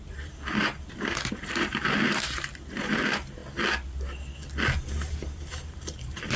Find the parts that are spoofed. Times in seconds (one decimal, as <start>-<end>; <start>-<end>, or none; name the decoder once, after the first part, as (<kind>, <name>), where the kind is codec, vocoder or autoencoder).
0.0-3.4 (vocoder, BigVGAN v2); 4.8-6.4